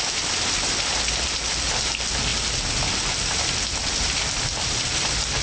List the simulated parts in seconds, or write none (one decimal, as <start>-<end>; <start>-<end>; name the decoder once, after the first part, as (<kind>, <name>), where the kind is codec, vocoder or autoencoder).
none